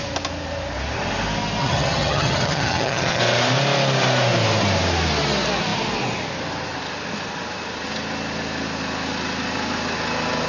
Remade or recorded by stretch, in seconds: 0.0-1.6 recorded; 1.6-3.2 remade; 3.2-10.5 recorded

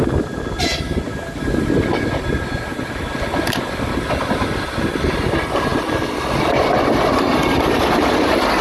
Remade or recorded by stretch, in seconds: 0.0-8.6 recorded